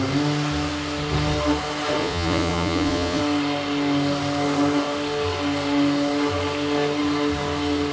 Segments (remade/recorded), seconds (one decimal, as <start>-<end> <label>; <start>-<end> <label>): 0.0-2.0 recorded; 2.0-3.2 remade; 3.2-7.9 recorded